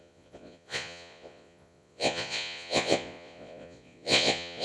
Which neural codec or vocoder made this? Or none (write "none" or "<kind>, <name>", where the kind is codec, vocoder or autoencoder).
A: vocoder, Vocos